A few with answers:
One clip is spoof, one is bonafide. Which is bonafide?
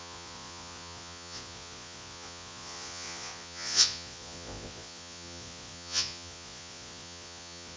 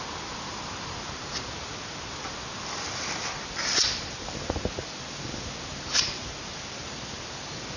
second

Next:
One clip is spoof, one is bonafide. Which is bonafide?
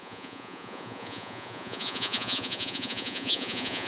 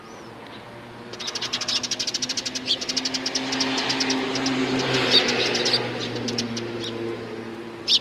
second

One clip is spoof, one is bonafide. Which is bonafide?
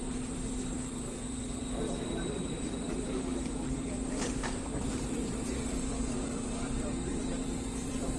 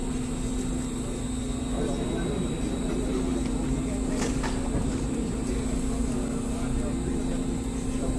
second